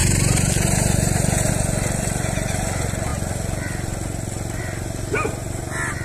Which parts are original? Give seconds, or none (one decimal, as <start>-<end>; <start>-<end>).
1.5-6.0